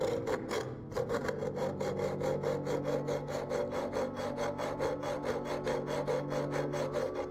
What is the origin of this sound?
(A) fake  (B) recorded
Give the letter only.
B